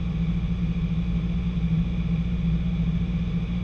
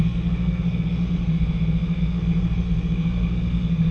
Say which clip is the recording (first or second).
first